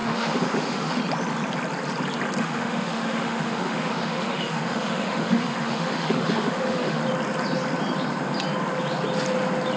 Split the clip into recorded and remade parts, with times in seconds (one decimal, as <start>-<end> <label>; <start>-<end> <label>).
0.0-1.0 remade; 1.0-2.4 recorded; 2.4-7.0 remade; 7.0-9.8 recorded